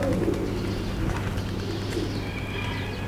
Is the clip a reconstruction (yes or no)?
no